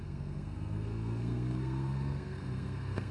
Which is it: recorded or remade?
remade